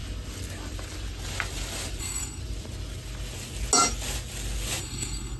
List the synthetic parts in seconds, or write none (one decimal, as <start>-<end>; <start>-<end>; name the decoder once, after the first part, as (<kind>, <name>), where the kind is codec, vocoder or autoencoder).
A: 2.0-2.4 (codec, SNAC); 4.8-5.4